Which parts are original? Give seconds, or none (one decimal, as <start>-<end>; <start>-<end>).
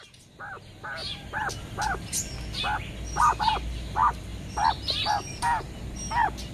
0.0-6.5